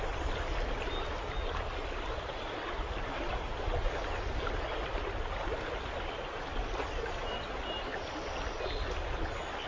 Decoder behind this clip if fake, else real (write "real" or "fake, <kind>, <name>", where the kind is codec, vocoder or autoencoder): real